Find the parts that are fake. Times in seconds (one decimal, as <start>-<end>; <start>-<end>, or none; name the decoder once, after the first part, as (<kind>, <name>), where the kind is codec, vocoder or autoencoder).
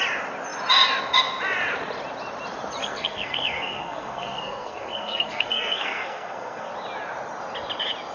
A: 2.8-6.7 (codec, SNAC)